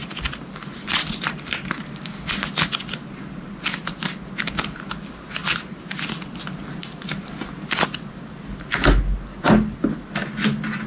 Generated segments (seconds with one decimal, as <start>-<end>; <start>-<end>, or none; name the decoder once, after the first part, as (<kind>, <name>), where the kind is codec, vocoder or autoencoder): none